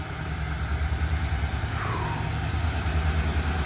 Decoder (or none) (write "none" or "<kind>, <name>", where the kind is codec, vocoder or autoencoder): none